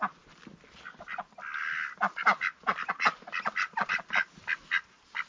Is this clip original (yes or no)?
yes